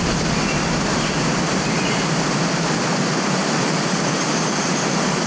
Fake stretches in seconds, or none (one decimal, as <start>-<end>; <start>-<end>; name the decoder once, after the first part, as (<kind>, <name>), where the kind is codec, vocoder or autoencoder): 0.9-4.1 (vocoder, BigVGAN v2)